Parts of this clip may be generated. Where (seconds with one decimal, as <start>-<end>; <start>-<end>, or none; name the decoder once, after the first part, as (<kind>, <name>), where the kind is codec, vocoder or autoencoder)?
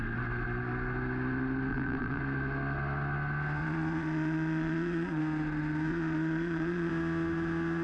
1.7-2.2 (vocoder, Vocos); 3.6-5.2; 5.9-6.9